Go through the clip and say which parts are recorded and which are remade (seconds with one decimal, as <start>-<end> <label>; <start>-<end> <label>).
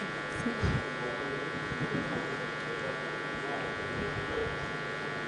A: 0.0-5.3 recorded